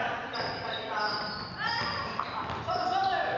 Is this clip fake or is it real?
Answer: real